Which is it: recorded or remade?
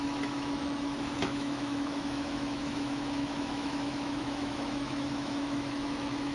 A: remade